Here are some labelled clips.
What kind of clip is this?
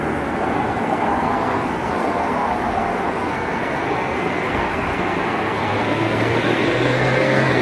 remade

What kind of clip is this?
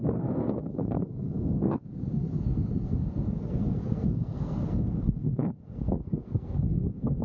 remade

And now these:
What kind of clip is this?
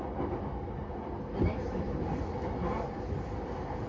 recorded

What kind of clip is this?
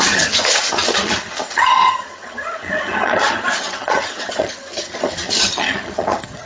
remade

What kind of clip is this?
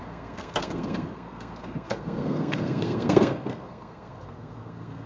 remade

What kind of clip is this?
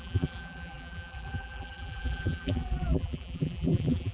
remade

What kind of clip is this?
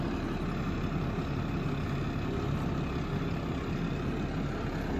recorded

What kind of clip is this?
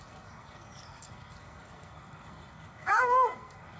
remade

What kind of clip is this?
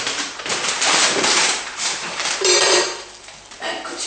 remade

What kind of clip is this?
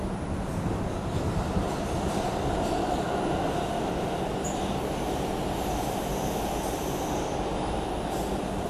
recorded